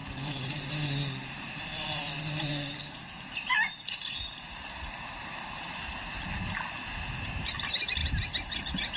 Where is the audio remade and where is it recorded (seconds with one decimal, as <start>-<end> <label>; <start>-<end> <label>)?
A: 0.0-9.0 remade